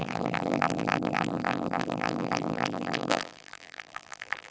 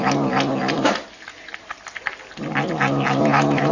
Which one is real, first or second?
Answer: second